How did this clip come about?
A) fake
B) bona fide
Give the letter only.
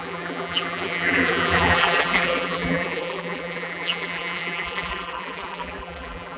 A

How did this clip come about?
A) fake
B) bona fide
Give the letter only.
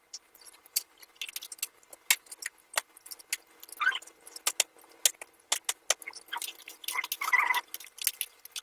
B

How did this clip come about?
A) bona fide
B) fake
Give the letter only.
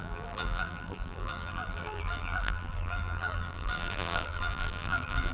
B